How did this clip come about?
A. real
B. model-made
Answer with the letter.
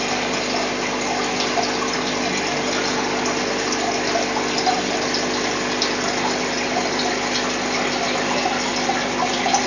A